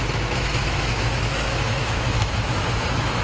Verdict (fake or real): fake